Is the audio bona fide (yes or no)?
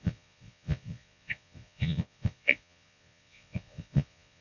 no